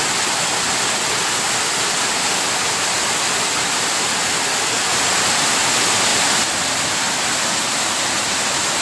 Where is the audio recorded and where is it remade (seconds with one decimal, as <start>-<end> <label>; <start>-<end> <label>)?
0.0-8.8 recorded